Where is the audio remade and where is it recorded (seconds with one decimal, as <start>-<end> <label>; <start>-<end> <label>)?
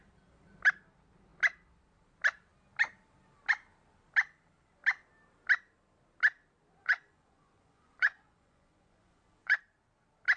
0.0-6.8 recorded; 6.8-9.6 remade; 9.6-10.4 recorded